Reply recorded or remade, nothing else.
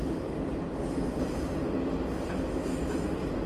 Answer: recorded